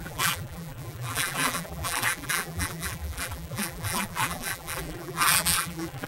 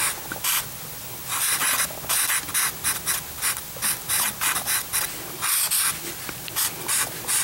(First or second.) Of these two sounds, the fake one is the first